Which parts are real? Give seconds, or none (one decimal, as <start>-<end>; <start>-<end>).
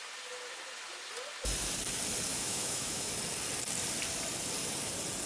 0.0-2.3; 3.1-5.3